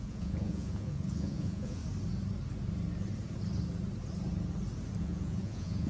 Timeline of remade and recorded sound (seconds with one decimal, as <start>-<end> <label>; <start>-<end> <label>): 0.0-1.8 remade; 1.8-5.0 recorded; 5.0-5.9 remade